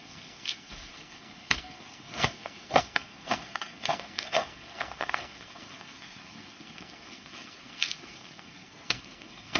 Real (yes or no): no